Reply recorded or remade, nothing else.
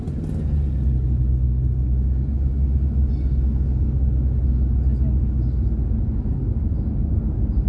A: recorded